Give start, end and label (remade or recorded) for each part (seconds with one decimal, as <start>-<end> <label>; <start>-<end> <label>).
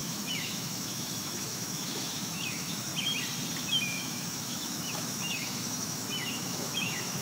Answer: 0.0-2.9 remade; 2.9-3.6 recorded; 3.6-7.2 remade